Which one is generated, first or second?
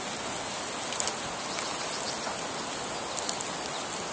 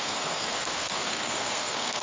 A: second